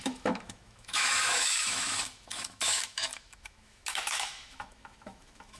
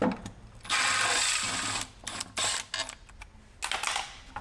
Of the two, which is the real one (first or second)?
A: second